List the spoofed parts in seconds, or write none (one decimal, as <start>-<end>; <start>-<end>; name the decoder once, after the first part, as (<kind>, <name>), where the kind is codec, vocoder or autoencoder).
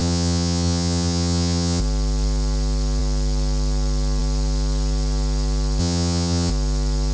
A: 0.0-1.8 (vocoder, HiFi-GAN); 5.8-6.5